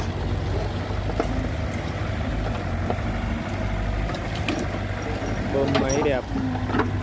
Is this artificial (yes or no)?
no